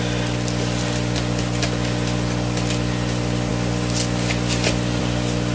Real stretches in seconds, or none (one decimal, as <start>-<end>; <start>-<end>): 0.0-5.5